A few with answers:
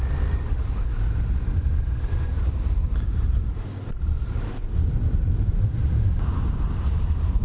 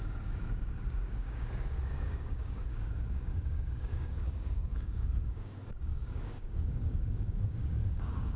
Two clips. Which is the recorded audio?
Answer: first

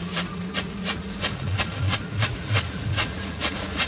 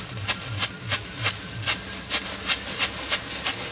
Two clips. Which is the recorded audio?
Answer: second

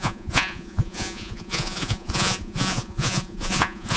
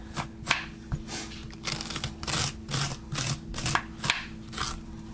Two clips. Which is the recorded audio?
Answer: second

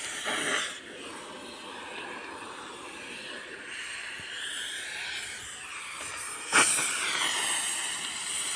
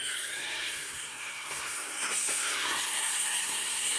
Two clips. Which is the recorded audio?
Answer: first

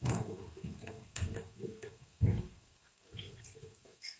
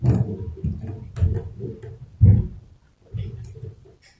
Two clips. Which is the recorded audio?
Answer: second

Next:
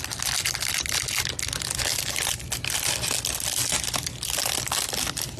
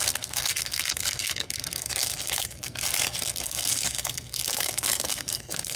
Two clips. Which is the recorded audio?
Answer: first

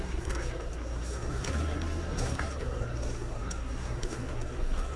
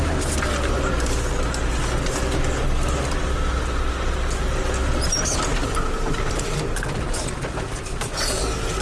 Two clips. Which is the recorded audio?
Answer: second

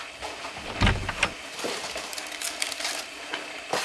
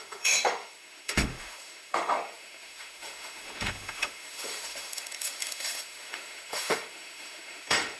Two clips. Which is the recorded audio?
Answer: first